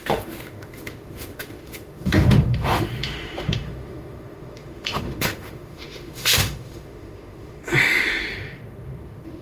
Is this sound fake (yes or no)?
yes